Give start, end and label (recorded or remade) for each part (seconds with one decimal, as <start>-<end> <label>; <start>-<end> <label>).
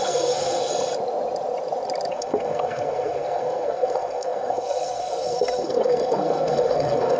0.0-0.7 remade; 0.7-2.1 recorded; 2.1-7.2 remade